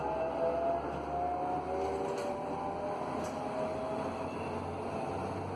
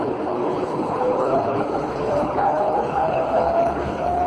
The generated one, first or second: second